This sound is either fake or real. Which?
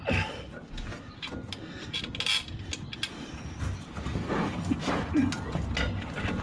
real